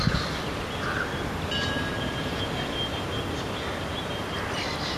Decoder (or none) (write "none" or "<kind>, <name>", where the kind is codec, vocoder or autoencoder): none